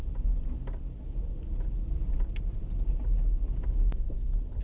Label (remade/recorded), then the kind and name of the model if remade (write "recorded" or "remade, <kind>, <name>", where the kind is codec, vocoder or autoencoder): recorded